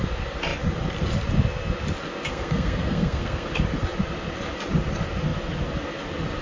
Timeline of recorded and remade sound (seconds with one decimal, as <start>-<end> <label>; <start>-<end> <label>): 0.0-2.3 recorded; 2.3-3.5 remade; 3.5-6.4 recorded